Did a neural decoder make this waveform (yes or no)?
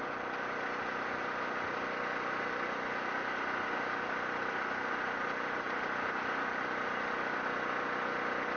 no